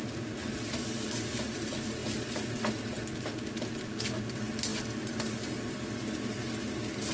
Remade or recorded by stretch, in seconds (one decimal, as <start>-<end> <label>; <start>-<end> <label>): 0.0-7.1 recorded